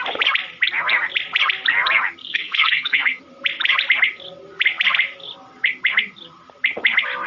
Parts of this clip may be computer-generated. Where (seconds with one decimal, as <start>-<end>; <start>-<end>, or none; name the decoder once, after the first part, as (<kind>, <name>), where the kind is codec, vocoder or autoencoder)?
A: 2.2-3.2 (codec, SNAC)